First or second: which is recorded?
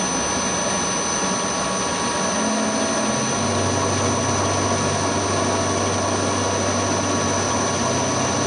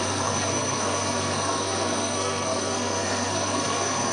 first